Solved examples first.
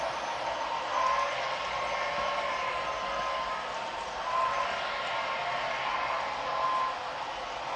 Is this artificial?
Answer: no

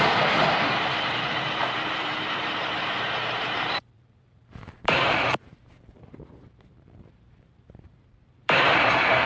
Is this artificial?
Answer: yes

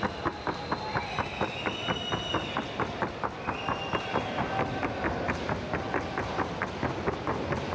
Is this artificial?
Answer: no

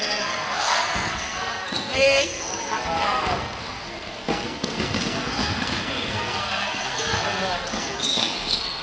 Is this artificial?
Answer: yes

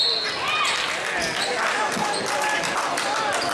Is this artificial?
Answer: no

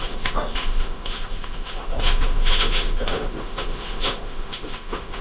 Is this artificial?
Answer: yes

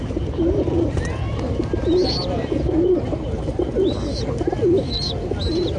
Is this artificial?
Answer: no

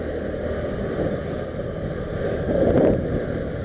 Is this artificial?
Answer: no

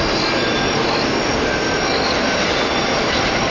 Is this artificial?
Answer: no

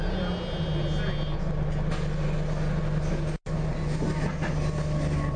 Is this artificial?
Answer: no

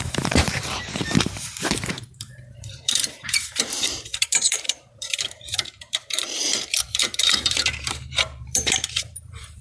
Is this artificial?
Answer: yes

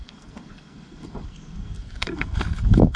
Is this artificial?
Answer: yes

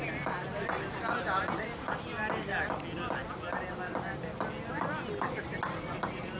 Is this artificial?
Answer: no